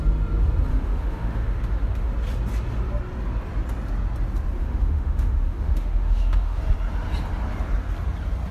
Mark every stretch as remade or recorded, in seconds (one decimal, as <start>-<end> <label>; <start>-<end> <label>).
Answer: 0.0-0.7 recorded; 0.7-2.1 remade; 2.1-4.6 recorded; 4.6-6.6 remade; 6.6-8.5 recorded